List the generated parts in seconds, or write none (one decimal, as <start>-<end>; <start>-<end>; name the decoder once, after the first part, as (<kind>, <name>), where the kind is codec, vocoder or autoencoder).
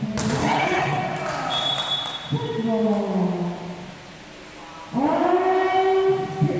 0.4-1.0 (codec, HILCodec)